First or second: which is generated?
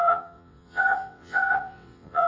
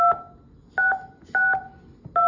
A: first